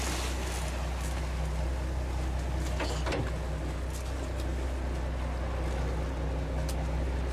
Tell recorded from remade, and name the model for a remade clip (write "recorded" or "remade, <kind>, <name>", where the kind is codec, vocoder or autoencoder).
recorded